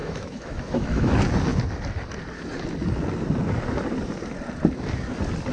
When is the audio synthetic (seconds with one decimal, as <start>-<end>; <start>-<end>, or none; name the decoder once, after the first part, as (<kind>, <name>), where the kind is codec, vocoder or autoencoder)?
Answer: 0.0-1.1 (autoencoder, DAC-VAE)